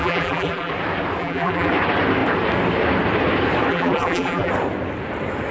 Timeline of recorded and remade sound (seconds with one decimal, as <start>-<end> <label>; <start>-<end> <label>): 0.0-0.7 remade; 0.7-1.2 recorded; 1.2-1.7 remade; 1.7-3.7 recorded; 3.7-4.5 remade; 4.5-5.5 recorded